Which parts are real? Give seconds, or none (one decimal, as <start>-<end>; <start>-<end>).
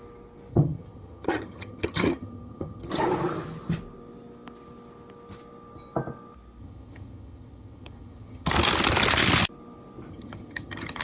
0.0-0.5; 2.9-6.6; 8.5-10.1